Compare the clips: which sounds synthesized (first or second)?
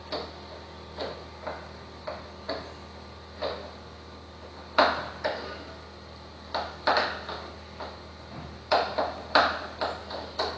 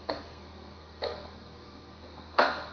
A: second